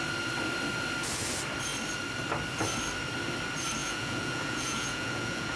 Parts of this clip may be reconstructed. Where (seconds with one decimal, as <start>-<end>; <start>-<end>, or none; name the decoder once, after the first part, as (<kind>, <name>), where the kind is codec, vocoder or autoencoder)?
3.8-5.6 (vocoder, Vocos)